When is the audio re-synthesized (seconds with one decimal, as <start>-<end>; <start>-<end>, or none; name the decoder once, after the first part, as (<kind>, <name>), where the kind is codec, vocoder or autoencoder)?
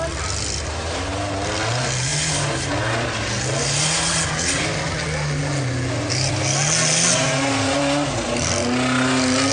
none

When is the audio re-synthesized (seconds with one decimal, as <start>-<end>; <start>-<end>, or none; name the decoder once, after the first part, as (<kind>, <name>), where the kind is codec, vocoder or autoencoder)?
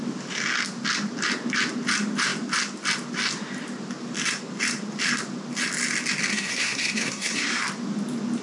6.3-7.6 (codec, SNAC)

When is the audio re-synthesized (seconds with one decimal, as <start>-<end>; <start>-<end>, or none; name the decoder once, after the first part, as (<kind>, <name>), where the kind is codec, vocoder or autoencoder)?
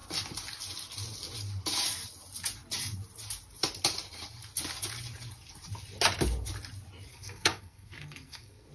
7.1-8.7 (codec, SNAC)